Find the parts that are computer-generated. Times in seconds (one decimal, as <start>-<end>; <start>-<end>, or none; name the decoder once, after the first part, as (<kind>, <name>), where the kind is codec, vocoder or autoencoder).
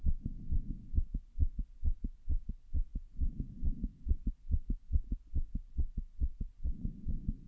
none